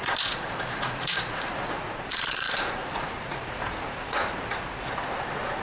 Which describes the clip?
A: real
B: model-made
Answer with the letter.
B